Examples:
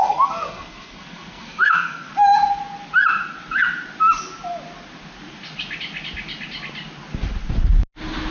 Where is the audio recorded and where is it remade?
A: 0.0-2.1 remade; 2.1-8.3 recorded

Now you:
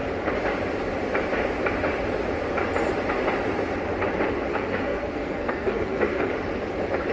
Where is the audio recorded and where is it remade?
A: 0.0-4.5 recorded; 4.5-6.3 remade; 6.3-7.1 recorded

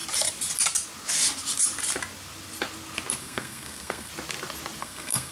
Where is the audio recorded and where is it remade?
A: 0.0-3.2 recorded; 3.2-4.1 remade; 4.1-4.8 recorded; 4.8-5.3 remade

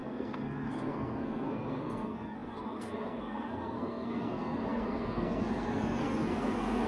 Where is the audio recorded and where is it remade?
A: 0.0-6.9 remade

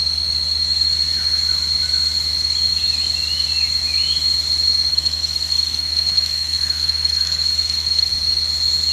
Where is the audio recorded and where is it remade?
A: 0.0-4.9 recorded; 4.9-8.1 remade; 8.1-8.9 recorded

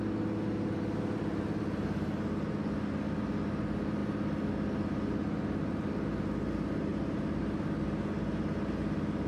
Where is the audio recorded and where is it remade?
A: 0.0-9.3 recorded